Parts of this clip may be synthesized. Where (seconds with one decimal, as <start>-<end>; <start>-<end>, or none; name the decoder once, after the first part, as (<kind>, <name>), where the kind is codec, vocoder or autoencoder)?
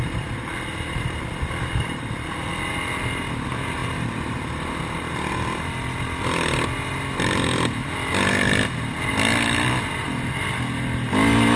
none